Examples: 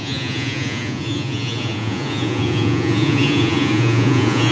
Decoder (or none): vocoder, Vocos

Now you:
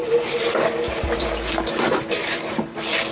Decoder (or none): vocoder, BigVGAN v2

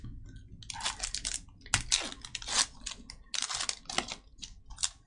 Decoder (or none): none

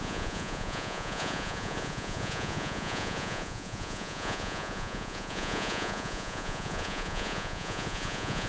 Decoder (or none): vocoder, Vocos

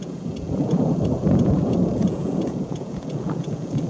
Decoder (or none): vocoder, Vocos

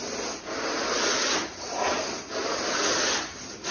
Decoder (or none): none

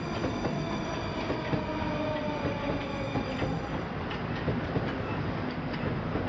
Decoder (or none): none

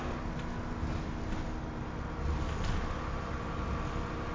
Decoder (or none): none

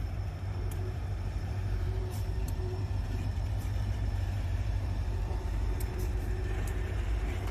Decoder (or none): vocoder, BigVGAN v2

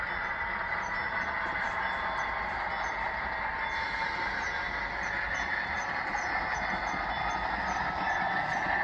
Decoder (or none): none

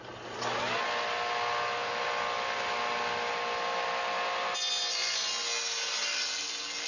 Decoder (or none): none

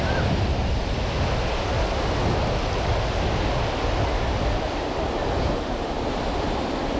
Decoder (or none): none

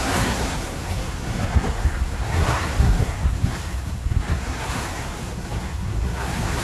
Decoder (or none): codec, SNAC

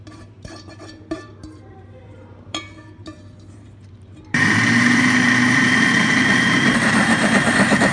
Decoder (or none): vocoder, BigVGAN v2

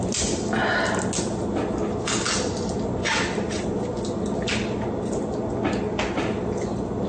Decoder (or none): none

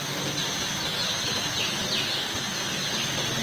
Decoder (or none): none